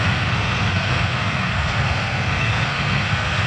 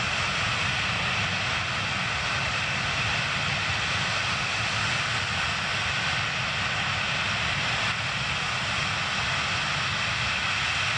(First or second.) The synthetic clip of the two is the first